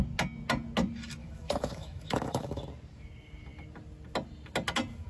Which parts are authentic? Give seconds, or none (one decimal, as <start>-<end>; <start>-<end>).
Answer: 0.0-1.2; 2.6-5.1